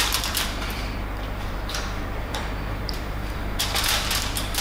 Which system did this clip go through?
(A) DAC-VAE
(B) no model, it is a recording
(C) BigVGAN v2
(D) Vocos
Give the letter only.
C